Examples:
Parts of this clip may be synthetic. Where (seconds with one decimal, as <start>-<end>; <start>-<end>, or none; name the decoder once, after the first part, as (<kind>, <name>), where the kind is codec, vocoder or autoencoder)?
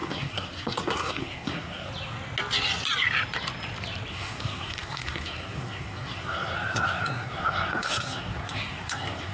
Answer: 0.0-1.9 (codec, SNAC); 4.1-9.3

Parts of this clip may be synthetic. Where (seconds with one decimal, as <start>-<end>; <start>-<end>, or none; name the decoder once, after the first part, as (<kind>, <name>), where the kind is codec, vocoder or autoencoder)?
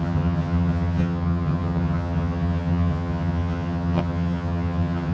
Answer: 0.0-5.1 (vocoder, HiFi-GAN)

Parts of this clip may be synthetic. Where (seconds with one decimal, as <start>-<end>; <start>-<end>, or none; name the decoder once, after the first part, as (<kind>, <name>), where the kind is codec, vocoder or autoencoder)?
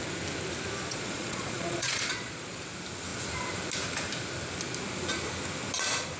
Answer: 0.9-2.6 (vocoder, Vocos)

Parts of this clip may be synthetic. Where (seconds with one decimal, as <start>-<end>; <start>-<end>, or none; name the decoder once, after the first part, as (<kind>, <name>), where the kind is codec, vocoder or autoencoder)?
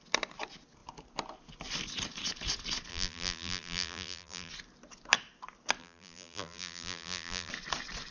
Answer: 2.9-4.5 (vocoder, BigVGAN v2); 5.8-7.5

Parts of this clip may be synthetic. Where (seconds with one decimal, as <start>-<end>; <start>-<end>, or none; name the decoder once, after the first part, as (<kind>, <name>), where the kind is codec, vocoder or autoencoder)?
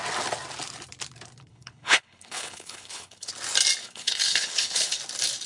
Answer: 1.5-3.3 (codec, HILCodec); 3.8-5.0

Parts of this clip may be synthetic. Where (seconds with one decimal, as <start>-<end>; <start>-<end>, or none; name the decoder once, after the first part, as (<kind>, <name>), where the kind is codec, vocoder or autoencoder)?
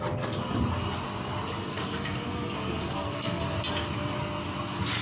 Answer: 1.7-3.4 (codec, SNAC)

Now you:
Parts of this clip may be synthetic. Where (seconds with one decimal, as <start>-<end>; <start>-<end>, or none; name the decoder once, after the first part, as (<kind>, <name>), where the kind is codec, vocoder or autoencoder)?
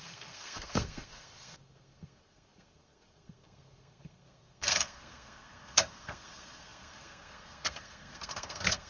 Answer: 0.0-8.9 (codec, SNAC)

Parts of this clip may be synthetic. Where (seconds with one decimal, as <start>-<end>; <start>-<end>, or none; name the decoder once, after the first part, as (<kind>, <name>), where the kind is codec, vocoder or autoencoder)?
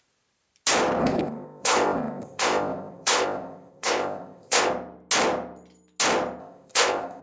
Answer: 1.0-4.7 (codec, ZipCodec); 6.4-7.2